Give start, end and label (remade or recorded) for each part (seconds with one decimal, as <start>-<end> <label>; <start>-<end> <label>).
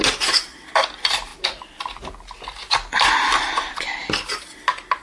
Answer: 0.0-1.3 recorded; 1.3-2.1 remade; 2.1-5.0 recorded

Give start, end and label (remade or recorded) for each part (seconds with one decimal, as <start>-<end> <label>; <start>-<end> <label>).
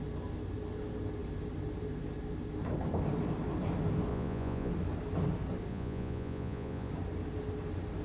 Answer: 0.0-4.1 recorded; 4.1-4.7 remade; 4.7-5.7 recorded; 5.7-6.9 remade; 6.9-8.0 recorded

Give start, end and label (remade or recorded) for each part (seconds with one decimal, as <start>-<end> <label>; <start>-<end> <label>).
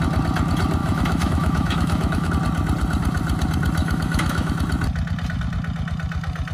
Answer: 0.0-0.8 recorded; 0.8-2.3 remade; 2.3-3.8 recorded; 3.8-4.5 remade; 4.5-6.5 recorded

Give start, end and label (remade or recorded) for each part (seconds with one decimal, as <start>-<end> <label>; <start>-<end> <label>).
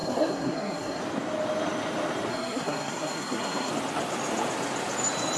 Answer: 0.0-1.0 remade; 1.0-2.3 recorded; 2.3-3.7 remade; 3.7-5.4 recorded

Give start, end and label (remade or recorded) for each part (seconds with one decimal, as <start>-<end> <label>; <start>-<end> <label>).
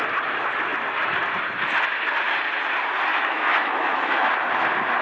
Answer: 0.0-3.1 recorded; 3.1-4.3 remade; 4.3-5.0 recorded